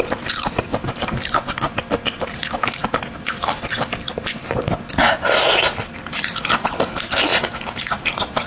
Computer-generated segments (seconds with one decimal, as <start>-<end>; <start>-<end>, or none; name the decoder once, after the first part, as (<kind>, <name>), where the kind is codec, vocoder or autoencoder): none

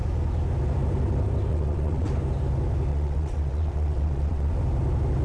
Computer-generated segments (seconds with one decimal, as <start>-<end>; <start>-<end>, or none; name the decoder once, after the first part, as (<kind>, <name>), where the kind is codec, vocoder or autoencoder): 1.5-2.1 (vocoder, WaveNeXt); 2.9-4.5

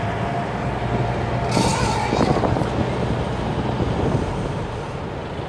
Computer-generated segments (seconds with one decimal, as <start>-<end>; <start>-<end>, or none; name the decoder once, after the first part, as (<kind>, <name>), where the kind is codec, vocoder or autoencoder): none

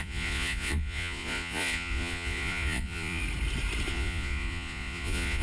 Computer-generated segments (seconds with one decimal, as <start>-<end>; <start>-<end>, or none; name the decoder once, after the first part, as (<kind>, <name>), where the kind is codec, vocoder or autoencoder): 0.0-3.2 (vocoder, Vocos); 3.9-5.4

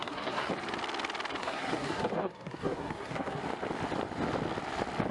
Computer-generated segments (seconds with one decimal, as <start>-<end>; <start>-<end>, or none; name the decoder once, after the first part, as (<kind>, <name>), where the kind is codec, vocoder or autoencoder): 0.0-0.5 (codec, SNAC); 1.4-3.4

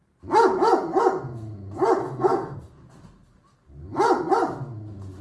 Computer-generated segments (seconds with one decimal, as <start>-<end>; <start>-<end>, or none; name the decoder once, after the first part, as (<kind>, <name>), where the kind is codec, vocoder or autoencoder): 2.0-2.7 (codec, SNAC)

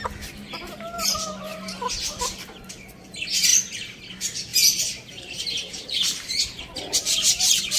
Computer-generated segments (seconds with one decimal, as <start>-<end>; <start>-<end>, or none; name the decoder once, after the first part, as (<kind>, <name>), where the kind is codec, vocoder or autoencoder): 4.5-6.6 (vocoder, BigVGAN v2)

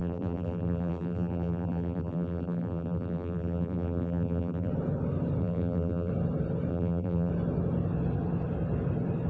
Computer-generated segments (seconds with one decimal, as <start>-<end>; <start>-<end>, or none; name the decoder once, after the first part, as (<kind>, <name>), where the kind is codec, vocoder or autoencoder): 0.0-4.7 (vocoder, BigVGAN v2); 5.4-6.1; 6.7-7.3